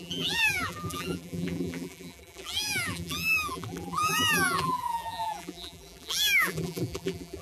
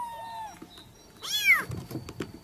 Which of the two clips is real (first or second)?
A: second